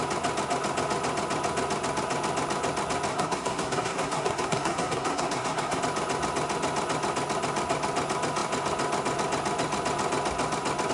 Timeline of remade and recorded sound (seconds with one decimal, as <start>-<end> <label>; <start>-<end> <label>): 0.0-3.1 recorded; 3.1-5.8 remade; 5.8-10.9 recorded